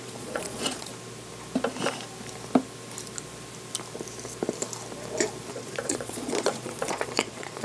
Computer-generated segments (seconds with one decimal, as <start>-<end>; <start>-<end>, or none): 0.0-0.9; 5.5-7.6